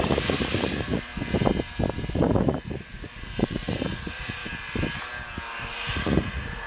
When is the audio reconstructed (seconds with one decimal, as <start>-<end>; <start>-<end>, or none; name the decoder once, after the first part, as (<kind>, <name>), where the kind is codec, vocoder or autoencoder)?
0.0-1.1 (vocoder, Vocos); 2.1-4.4; 5.7-6.7